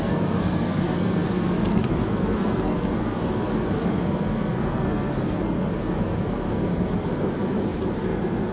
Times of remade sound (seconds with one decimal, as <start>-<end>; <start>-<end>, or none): 0.0-8.5